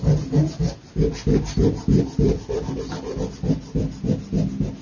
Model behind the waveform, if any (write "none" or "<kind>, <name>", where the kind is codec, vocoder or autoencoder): none